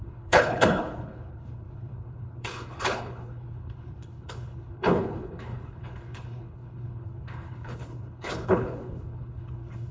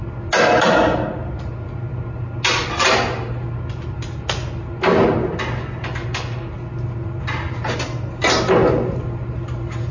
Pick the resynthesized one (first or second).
first